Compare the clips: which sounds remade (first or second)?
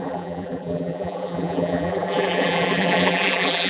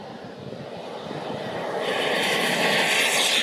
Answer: first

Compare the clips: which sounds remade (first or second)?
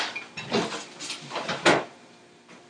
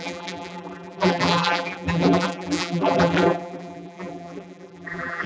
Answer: second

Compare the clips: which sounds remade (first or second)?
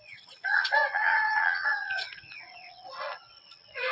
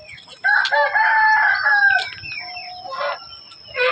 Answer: first